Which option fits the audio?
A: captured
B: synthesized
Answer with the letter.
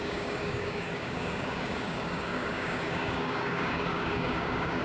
B